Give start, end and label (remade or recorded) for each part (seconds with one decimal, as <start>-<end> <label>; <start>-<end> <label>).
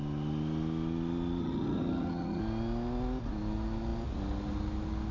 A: 0.0-1.4 recorded; 1.4-2.4 remade; 2.4-5.1 recorded